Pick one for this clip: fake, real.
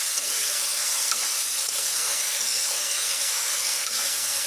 fake